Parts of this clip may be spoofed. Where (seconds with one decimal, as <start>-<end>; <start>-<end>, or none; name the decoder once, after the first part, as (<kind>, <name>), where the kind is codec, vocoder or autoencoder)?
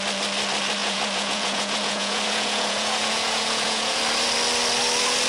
0.8-4.0 (vocoder, Vocos)